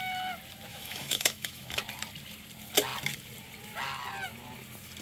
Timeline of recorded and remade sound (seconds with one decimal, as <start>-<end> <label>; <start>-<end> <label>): 0.0-0.7 recorded; 0.7-1.8 remade; 1.8-5.0 recorded